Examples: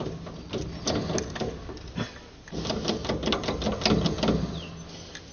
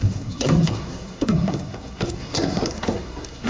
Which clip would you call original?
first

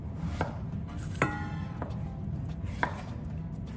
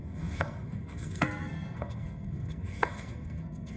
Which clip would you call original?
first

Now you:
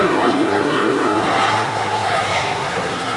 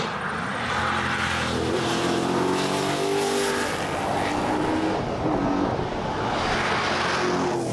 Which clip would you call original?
second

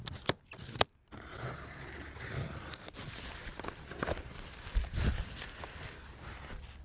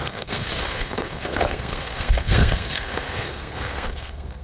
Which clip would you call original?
first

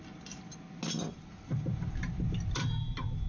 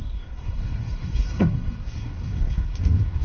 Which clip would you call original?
first